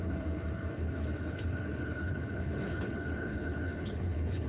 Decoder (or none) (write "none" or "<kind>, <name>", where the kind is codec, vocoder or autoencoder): codec, HILCodec